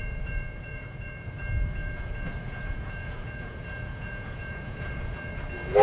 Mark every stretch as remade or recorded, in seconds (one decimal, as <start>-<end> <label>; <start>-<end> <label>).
0.0-1.4 remade; 1.4-1.8 recorded; 1.8-5.3 remade; 5.3-5.8 recorded